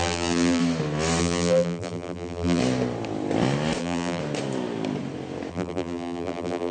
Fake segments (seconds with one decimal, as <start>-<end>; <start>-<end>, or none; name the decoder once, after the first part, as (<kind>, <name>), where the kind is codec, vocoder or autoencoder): 0.0-0.6 (vocoder, BigVGAN v2); 1.2-2.6; 3.8-4.2; 5.5-6.7